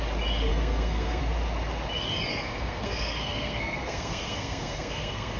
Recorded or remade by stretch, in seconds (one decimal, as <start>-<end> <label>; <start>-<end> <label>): 0.0-0.5 recorded; 0.5-1.2 remade; 1.2-2.3 recorded; 2.3-5.4 remade